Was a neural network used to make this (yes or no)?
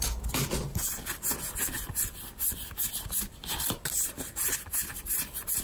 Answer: no